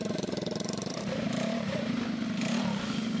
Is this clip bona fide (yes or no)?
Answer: no